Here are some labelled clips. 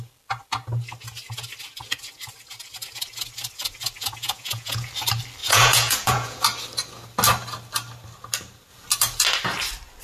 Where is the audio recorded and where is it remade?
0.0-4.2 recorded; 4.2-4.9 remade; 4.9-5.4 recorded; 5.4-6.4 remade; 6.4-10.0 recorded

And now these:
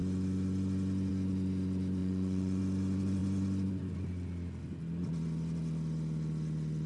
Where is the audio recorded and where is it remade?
0.0-2.0 recorded; 2.0-2.6 remade; 2.6-6.9 recorded

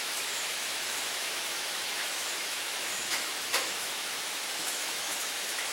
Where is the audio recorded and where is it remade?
0.0-5.7 remade

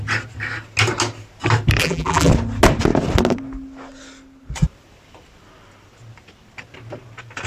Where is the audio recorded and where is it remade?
0.0-1.8 recorded; 1.8-2.3 remade; 2.3-7.5 recorded

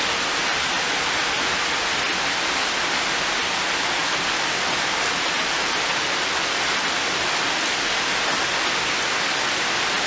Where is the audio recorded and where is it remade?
0.0-10.1 recorded

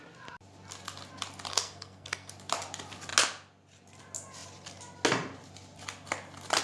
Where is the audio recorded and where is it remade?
0.0-1.5 recorded; 1.5-2.3 remade; 2.3-6.6 recorded

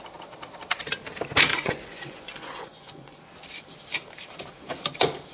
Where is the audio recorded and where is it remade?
0.0-1.5 recorded; 1.5-3.2 remade; 3.2-5.3 recorded

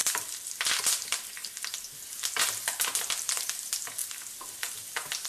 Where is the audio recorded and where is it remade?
0.0-5.3 recorded